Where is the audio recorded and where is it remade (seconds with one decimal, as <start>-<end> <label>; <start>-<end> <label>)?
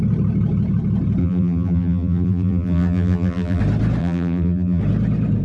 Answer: 0.0-1.2 recorded; 1.2-3.6 remade; 3.6-4.0 recorded; 4.0-4.8 remade; 4.8-5.4 recorded